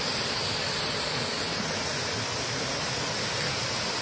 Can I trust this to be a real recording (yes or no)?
yes